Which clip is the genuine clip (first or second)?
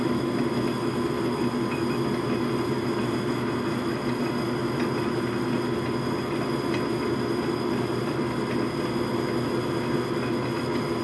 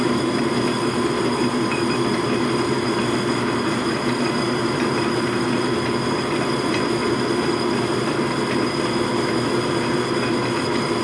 first